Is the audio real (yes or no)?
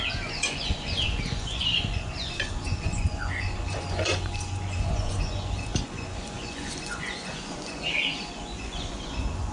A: no